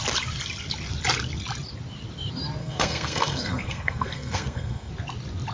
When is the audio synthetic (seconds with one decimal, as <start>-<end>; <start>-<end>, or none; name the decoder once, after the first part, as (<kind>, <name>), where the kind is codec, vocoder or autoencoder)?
2.6-4.9 (codec, SNAC)